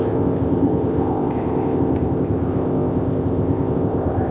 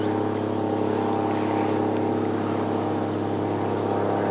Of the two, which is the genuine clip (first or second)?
second